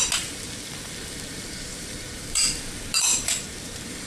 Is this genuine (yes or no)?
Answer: no